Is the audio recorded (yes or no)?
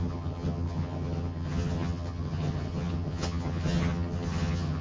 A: no